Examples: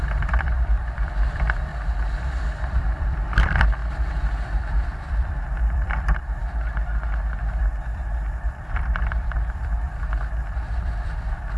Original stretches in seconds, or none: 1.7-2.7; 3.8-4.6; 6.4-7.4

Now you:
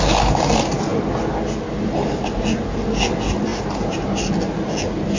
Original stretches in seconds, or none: 0.0-3.5; 4.3-5.2

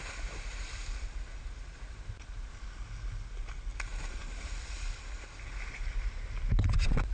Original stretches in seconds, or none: 0.0-3.7; 4.2-7.1

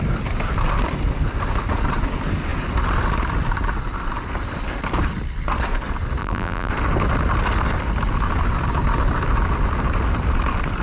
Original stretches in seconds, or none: 0.0-6.2; 6.7-10.8

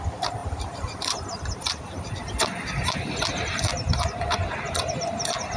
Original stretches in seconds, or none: 0.0-0.4; 3.6-5.6

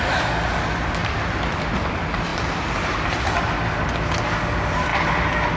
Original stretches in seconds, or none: 0.0-1.0; 1.9-4.9

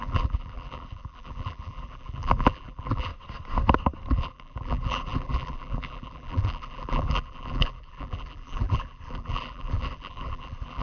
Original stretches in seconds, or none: 3.1-4.1

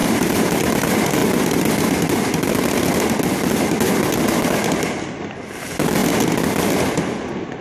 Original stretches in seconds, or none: 1.2-4.9; 6.0-6.7